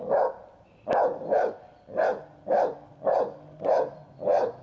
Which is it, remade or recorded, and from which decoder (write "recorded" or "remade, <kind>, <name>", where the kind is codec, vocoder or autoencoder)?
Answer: recorded